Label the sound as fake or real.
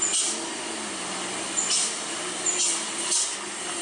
real